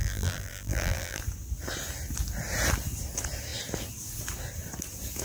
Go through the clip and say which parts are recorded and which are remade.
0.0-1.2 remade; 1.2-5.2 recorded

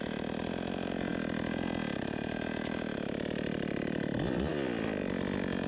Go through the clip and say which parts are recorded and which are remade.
0.0-5.7 recorded

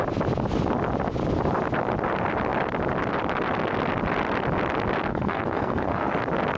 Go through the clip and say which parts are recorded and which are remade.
0.0-5.1 recorded; 5.1-6.1 remade; 6.1-6.6 recorded

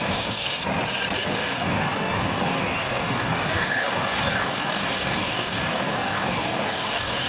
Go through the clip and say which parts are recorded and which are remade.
0.0-0.6 remade; 0.6-1.2 recorded; 1.2-7.3 remade

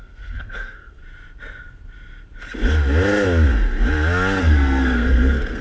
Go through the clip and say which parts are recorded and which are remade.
0.0-1.0 remade; 1.0-4.4 recorded; 4.4-5.6 remade

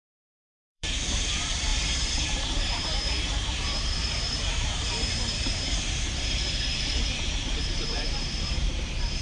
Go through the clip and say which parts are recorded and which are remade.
0.0-9.2 remade